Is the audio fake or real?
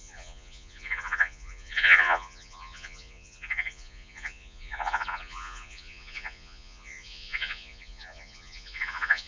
fake